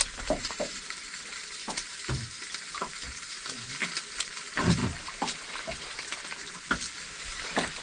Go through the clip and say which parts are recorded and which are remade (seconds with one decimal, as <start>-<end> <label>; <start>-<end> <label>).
0.0-3.7 remade; 3.7-4.2 recorded; 4.2-4.8 remade; 4.8-7.1 recorded; 7.1-7.8 remade